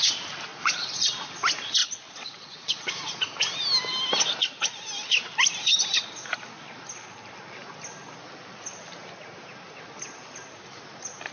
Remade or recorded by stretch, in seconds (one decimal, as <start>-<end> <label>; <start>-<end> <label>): 0.0-0.5 recorded; 0.5-1.2 remade; 1.2-1.8 recorded; 1.8-2.9 remade; 2.9-11.3 recorded